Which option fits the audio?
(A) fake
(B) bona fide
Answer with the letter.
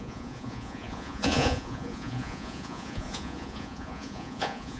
A